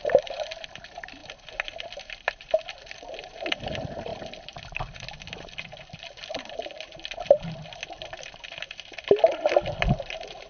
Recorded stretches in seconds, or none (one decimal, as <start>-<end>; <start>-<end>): 1.2-2.9